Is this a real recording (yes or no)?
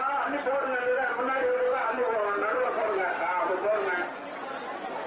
no